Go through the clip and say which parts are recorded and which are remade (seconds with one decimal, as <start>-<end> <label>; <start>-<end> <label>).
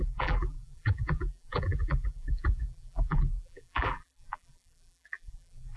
0.0-5.8 remade